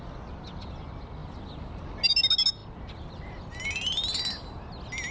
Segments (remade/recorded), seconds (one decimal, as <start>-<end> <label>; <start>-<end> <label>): 0.0-5.1 recorded